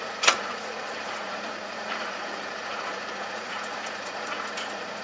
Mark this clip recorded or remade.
remade